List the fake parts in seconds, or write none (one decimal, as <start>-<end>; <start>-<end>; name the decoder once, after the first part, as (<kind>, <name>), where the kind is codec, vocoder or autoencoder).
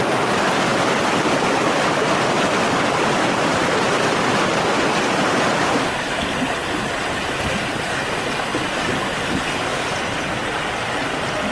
0.7-4.2 (vocoder, BigVGAN v2); 8.5-9.0; 9.7-10.4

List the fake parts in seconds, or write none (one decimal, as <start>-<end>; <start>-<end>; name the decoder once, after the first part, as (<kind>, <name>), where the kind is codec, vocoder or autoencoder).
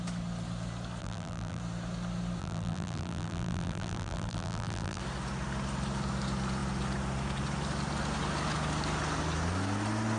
1.0-1.6 (vocoder, BigVGAN v2); 2.4-5.0